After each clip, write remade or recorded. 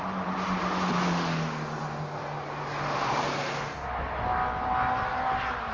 recorded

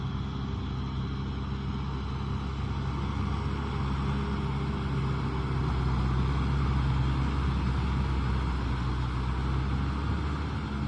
recorded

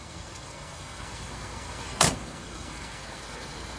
remade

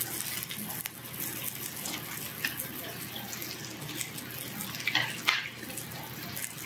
recorded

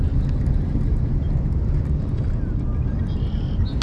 recorded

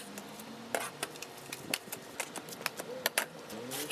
recorded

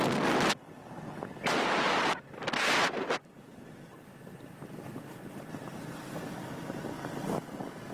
recorded